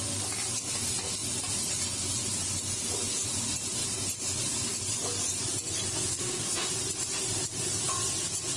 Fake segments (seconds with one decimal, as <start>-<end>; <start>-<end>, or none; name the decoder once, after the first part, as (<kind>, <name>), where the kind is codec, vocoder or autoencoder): 6.1-6.7 (codec, SNAC)